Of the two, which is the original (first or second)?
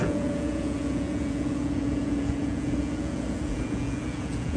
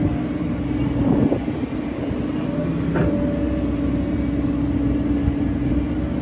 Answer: second